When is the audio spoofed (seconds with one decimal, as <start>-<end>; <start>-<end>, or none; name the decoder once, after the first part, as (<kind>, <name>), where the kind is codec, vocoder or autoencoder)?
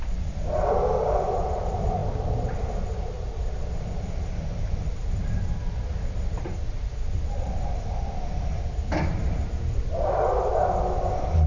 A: none